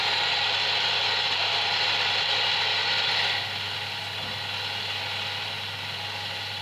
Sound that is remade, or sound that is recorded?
recorded